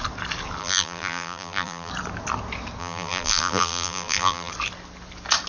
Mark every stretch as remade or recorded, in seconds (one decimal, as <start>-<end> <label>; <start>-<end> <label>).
0.0-0.6 recorded; 0.6-1.9 remade; 1.9-2.8 recorded; 2.8-4.5 remade; 4.5-5.5 recorded